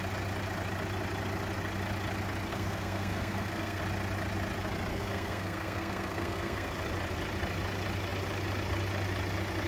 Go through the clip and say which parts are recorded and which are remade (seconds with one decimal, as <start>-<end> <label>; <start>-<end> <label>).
0.0-2.5 recorded; 2.5-3.8 remade; 3.8-4.9 recorded; 4.9-6.7 remade; 6.7-9.7 recorded